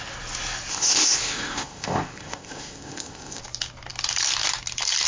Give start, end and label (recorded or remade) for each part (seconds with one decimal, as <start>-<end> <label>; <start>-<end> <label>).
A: 0.0-0.7 recorded; 0.7-3.4 remade; 3.4-5.1 recorded

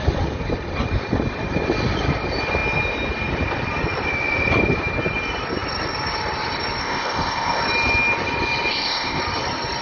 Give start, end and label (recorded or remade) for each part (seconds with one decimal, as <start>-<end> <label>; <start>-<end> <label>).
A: 0.0-6.8 recorded; 6.8-7.6 remade; 7.6-8.7 recorded; 8.7-9.2 remade; 9.2-9.8 recorded

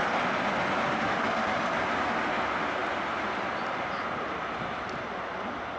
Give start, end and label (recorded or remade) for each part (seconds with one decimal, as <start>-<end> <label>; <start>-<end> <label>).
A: 0.0-5.8 recorded

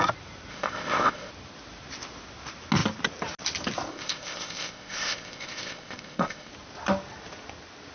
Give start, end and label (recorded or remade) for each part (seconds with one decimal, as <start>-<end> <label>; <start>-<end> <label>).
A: 0.0-0.5 recorded; 0.5-1.3 remade; 1.3-3.9 recorded; 3.9-6.5 remade; 6.5-7.9 recorded

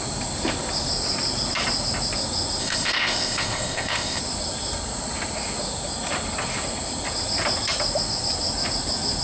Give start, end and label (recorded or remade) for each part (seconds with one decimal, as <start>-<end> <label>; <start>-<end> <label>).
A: 0.0-2.6 recorded; 2.6-4.2 remade; 4.2-9.2 recorded